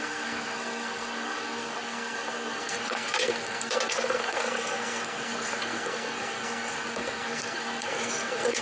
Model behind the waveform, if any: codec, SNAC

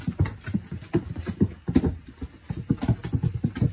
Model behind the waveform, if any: none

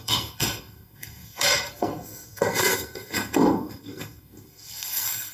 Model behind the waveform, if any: codec, SNAC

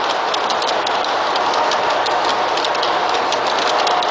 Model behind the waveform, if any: none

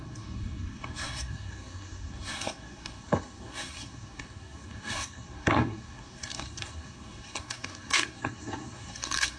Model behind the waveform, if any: codec, SNAC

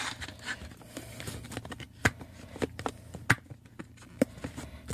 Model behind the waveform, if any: none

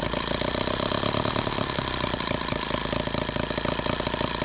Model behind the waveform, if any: none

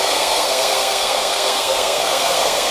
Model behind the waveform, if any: codec, SNAC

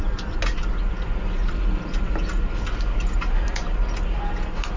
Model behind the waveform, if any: none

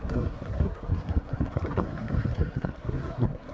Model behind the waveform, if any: codec, SNAC